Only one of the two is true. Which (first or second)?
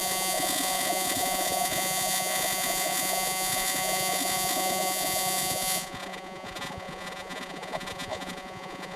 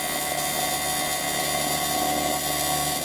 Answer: second